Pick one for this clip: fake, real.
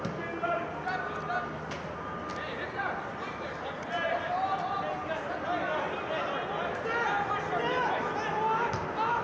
real